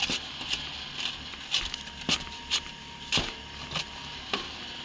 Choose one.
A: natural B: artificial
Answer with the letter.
A